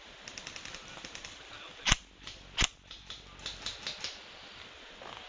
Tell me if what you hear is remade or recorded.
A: recorded